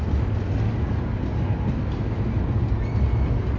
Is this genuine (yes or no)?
yes